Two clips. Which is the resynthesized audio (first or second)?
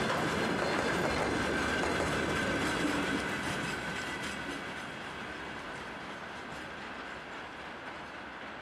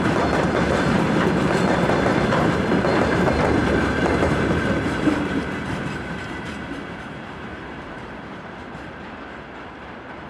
second